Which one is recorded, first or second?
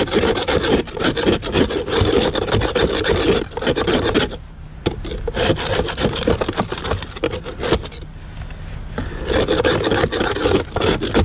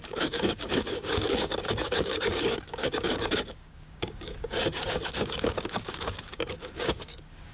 first